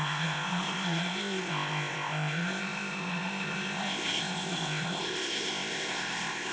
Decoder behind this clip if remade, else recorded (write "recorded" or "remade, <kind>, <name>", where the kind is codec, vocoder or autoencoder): remade, codec, ZipCodec